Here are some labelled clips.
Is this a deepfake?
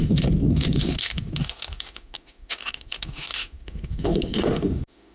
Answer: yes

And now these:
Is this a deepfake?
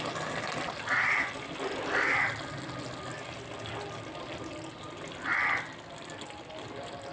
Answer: no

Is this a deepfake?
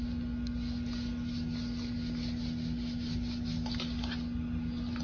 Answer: no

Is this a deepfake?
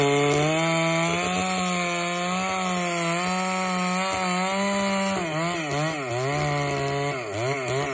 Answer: no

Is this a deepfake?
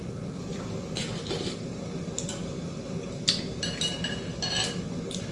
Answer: no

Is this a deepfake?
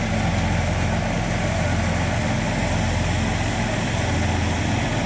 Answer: no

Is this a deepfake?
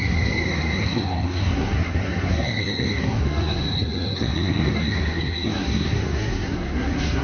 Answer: yes